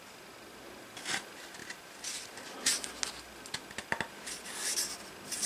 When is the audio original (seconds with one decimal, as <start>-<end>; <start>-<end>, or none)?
0.0-5.5